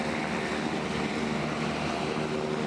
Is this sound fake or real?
real